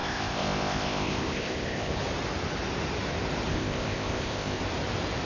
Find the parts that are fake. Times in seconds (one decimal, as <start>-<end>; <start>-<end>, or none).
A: 0.0-2.0; 3.5-4.6